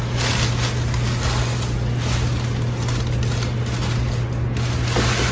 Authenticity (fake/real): real